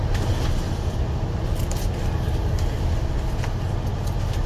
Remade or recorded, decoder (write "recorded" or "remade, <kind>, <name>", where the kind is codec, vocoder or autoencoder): recorded